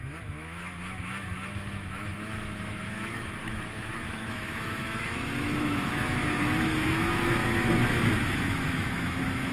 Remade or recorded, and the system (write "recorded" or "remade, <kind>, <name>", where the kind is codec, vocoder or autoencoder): remade, autoencoder, DAC-VAE